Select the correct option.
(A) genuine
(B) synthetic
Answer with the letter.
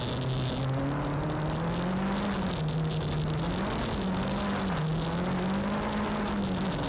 A